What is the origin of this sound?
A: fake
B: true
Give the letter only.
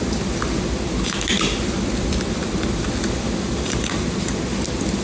B